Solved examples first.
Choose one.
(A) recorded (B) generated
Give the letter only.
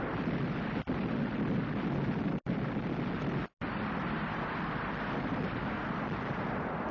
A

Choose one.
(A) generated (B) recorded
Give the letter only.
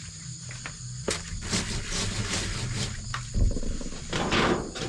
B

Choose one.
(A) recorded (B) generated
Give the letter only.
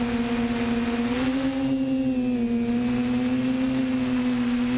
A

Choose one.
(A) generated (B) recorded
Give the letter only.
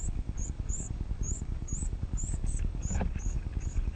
A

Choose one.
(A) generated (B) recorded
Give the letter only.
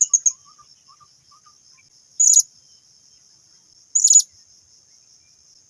B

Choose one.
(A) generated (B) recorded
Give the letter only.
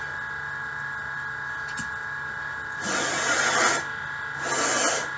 B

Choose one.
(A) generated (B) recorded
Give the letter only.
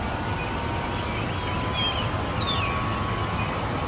B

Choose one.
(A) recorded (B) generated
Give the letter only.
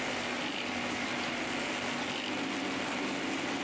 A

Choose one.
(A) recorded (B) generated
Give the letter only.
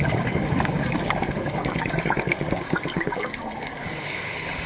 B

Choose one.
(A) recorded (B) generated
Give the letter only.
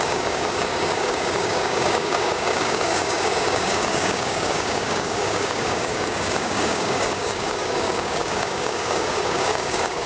B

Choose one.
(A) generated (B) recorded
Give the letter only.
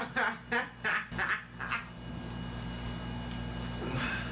B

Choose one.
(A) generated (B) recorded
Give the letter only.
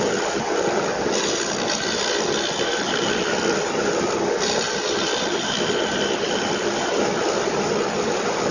B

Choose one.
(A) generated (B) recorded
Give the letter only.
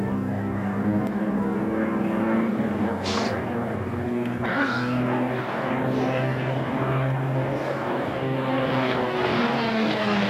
A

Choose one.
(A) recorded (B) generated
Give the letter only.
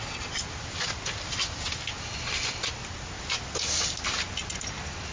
A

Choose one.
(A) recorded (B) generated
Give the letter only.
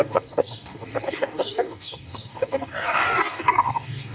B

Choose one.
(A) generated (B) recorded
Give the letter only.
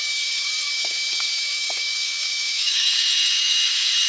A